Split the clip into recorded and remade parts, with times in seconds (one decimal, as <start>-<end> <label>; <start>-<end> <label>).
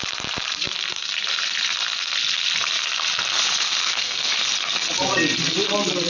0.0-3.8 recorded; 3.8-4.3 remade; 4.3-6.1 recorded